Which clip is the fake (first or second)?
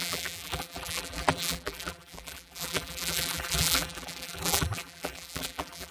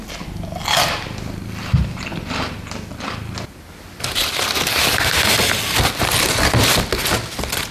first